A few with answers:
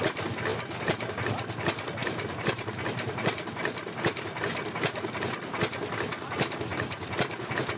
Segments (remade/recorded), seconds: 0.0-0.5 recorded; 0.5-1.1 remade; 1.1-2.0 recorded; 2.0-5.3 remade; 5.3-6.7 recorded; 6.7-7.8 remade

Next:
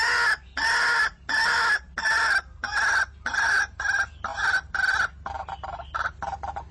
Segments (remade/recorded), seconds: 0.0-6.7 recorded

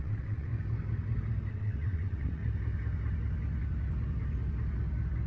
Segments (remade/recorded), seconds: 0.0-0.5 remade; 0.5-1.5 recorded; 1.5-2.4 remade; 2.4-5.3 recorded